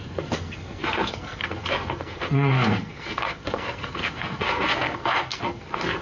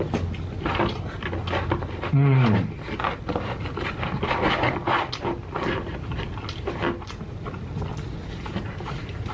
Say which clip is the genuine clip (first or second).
second